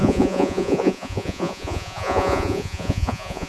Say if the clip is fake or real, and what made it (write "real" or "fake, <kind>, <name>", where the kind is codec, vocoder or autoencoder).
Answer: fake, vocoder, Vocos